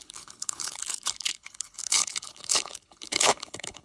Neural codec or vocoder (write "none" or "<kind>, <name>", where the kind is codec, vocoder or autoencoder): codec, HILCodec